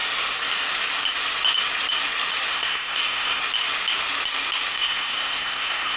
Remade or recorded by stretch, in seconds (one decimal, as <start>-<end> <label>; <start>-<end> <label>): 0.0-2.5 recorded; 2.5-3.4 remade; 3.4-4.7 recorded; 4.7-6.0 remade